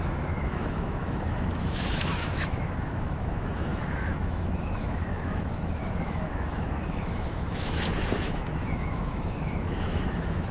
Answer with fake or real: fake